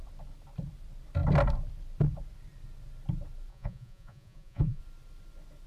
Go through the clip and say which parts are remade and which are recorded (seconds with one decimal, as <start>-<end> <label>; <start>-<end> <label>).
0.0-3.5 recorded; 3.5-4.8 remade; 4.8-5.7 recorded